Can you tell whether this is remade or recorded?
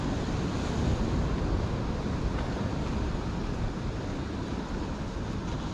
recorded